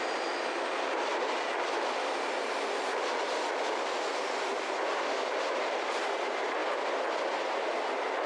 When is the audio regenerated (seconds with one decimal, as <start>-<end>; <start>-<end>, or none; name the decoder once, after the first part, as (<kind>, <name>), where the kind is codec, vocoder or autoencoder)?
none